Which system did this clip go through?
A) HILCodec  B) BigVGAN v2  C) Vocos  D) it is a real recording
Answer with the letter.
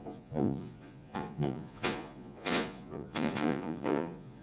C